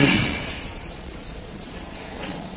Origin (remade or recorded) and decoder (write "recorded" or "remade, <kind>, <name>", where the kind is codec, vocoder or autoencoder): remade, vocoder, Vocos